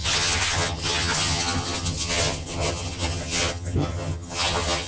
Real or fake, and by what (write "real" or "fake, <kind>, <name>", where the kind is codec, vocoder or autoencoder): fake, vocoder, HiFi-GAN